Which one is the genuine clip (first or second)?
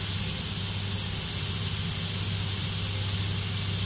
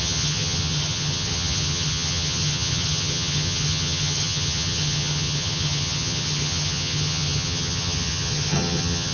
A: first